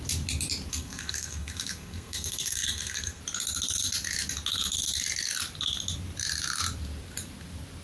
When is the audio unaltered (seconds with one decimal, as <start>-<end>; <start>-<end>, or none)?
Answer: 0.0-0.7; 3.2-7.8